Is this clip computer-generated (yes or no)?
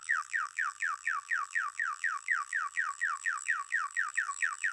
yes